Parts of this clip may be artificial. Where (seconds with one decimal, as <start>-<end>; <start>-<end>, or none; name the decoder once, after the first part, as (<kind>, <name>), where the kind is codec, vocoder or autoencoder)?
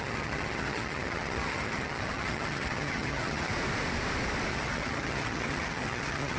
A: 0.0-3.5 (vocoder, HiFi-GAN); 4.5-6.4